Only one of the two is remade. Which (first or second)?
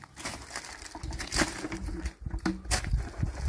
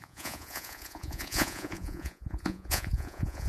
second